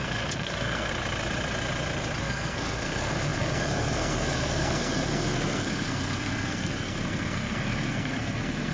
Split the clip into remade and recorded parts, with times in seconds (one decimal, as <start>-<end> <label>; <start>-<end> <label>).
0.0-0.9 remade; 0.9-2.2 recorded; 2.2-8.7 remade